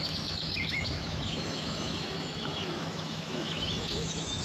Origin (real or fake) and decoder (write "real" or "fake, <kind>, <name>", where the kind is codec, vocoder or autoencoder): fake, autoencoder, DAC-VAE